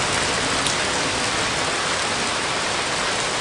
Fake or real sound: real